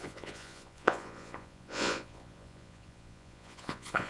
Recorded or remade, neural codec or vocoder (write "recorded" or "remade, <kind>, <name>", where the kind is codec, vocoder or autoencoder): remade, vocoder, Vocos